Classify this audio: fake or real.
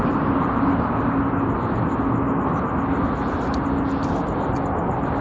real